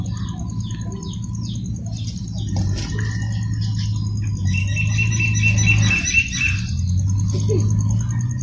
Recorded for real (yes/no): yes